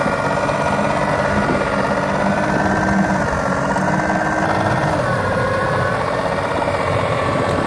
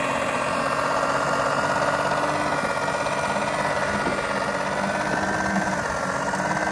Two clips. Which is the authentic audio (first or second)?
second